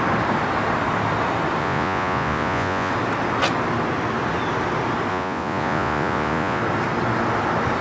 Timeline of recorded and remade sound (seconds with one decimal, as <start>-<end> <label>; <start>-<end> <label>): 0.0-1.6 recorded; 1.6-2.9 remade; 2.9-5.1 recorded; 5.1-6.6 remade; 6.6-7.8 recorded